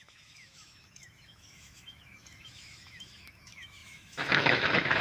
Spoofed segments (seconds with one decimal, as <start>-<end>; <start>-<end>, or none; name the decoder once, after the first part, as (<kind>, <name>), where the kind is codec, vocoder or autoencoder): 0.0-5.0 (autoencoder, DAC-VAE)